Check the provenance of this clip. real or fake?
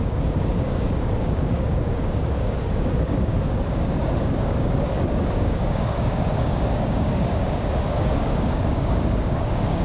fake